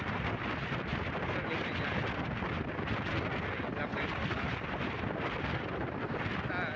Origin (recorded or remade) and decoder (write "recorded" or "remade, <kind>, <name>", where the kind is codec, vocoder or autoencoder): remade, vocoder, BigVGAN v2